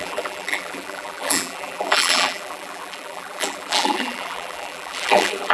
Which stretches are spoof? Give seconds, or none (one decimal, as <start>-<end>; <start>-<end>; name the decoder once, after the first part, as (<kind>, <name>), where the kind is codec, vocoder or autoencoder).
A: 0.0-5.5 (vocoder, BigVGAN v2)